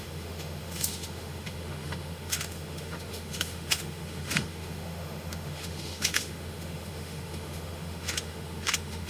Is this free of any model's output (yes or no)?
no